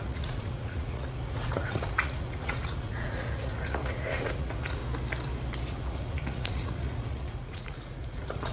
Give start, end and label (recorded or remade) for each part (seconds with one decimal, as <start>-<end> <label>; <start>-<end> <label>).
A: 0.0-4.8 remade; 4.8-5.7 recorded; 5.7-8.5 remade